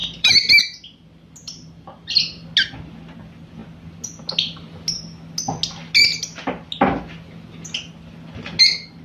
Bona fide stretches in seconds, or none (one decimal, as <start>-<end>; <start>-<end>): 0.5-1.4; 2.2-9.0